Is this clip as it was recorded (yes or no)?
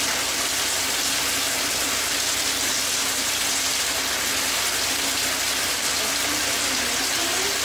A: yes